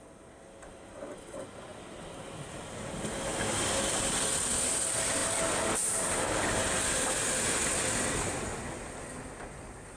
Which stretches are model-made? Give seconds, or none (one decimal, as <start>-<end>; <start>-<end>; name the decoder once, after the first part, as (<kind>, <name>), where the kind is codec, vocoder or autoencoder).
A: none